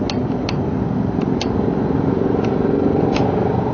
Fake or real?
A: real